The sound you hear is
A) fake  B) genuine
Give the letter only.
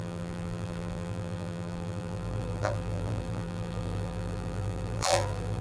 A